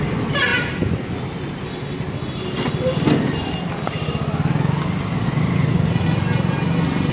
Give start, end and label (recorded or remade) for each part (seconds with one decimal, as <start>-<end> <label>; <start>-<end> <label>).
0.0-7.1 recorded